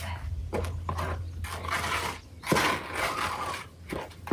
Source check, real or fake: real